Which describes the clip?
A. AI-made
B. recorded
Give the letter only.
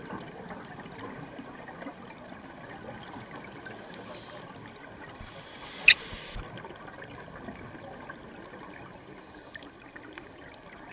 B